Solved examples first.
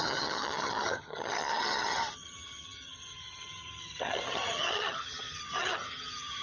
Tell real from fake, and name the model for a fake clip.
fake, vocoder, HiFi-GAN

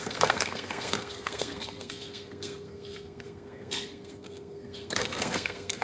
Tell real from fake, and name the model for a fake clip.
fake, codec, SNAC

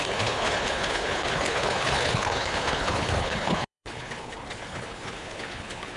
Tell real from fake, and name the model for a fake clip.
fake, codec, HILCodec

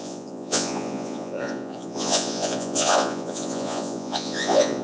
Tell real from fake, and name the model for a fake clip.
fake, vocoder, Vocos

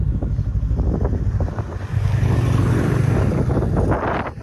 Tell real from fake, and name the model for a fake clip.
real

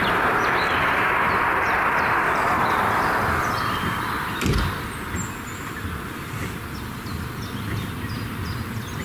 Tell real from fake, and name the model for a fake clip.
real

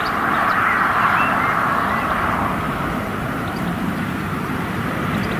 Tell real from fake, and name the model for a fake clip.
fake, vocoder, BigVGAN v2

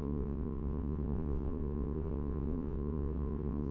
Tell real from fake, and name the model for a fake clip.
fake, vocoder, WaveNeXt